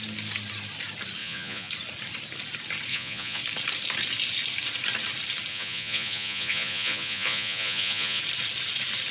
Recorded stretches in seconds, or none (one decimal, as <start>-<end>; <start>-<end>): 0.0-1.2; 1.7-2.9; 3.4-5.5; 8.2-9.1